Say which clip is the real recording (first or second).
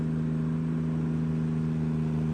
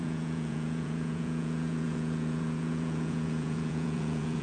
first